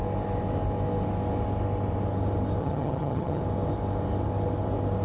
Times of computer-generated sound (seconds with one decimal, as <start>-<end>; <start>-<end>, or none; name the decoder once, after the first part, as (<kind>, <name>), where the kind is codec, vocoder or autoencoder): 2.6-3.4 (vocoder, HiFi-GAN)